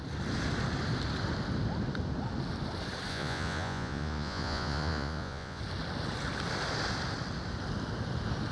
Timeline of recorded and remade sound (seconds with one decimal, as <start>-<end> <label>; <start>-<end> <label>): 0.0-3.1 recorded; 3.1-5.6 remade; 5.6-8.5 recorded